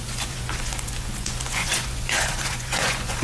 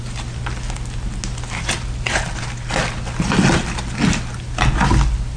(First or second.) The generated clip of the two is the first